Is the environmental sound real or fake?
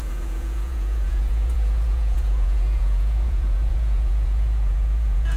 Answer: fake